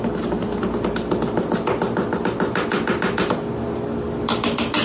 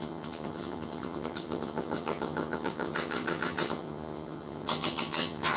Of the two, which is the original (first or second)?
first